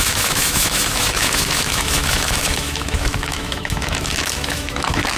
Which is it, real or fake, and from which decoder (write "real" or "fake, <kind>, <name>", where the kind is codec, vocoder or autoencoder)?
fake, autoencoder, DAC-VAE